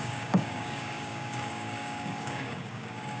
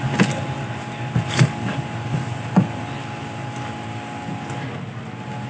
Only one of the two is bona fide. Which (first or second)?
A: second